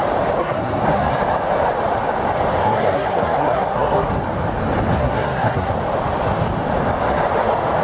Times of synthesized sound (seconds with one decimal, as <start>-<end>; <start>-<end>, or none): 0.4-1.1; 2.6-4.2; 5.0-5.7